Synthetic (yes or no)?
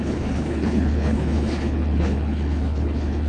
yes